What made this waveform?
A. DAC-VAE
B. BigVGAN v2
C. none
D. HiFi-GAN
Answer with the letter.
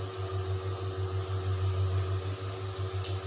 C